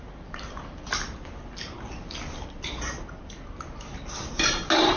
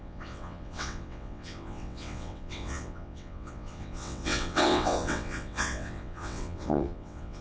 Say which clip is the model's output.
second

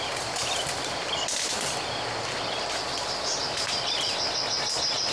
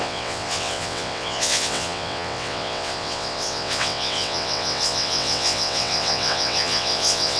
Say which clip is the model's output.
second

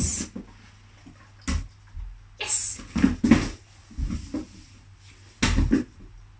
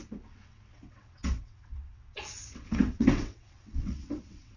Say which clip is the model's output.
second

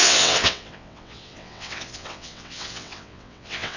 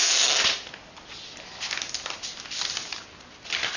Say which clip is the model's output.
first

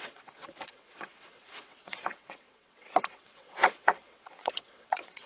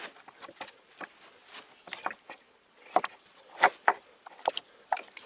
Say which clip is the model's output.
first